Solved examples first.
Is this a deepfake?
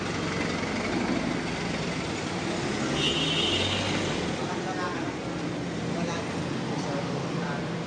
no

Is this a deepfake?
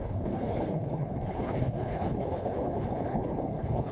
yes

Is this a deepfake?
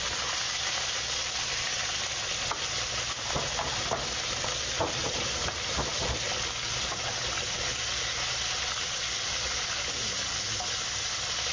no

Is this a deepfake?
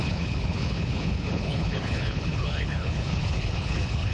yes